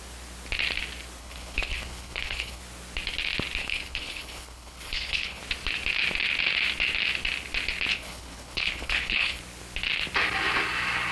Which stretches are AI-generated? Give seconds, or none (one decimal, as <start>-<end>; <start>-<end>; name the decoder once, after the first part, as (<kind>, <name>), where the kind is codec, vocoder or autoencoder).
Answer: 1.2-2.6 (codec, HILCodec); 3.6-5.4; 7.9-9.4